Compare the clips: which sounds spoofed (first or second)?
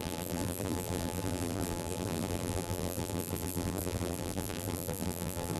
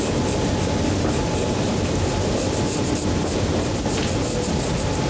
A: first